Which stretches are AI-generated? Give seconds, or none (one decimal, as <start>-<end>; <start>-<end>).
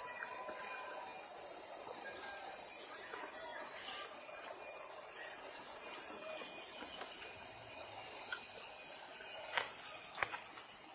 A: 2.4-3.0